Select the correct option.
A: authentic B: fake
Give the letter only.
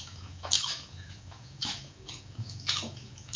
B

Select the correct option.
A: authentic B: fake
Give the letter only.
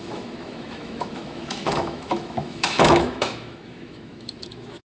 B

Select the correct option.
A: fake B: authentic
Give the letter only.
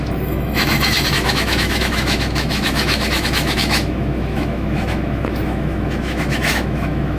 A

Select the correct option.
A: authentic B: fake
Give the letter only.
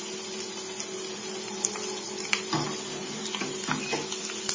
A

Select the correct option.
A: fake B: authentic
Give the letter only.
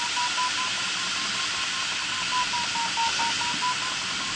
B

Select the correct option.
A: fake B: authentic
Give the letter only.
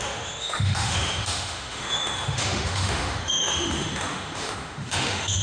A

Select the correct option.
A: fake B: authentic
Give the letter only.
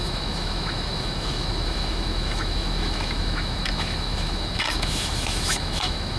A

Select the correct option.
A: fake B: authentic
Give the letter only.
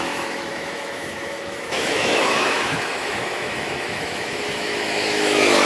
A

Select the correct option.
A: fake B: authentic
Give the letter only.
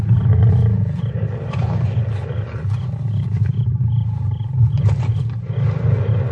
B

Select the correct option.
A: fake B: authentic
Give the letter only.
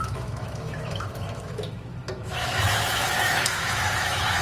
A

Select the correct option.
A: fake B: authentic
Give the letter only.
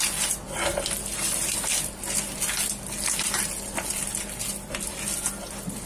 B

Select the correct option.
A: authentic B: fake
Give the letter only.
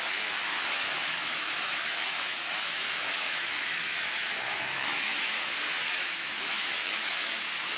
B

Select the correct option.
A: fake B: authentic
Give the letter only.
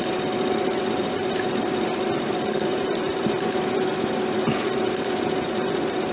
B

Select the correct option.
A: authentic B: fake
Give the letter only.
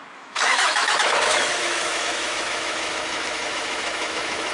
B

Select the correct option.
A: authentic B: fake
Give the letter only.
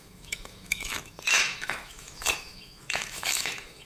B